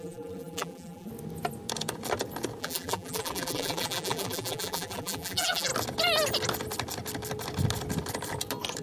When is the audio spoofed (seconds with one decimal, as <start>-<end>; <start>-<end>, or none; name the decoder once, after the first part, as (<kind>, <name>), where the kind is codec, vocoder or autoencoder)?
0.0-1.1 (vocoder, BigVGAN v2); 2.6-5.7